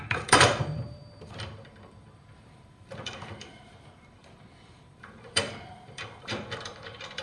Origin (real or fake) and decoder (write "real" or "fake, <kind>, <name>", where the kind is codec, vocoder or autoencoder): fake, vocoder, BigVGAN v2